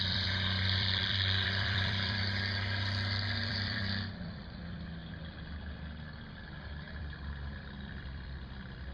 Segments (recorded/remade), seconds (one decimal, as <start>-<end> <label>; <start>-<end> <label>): 0.0-5.0 remade; 5.0-6.3 recorded; 6.3-8.9 remade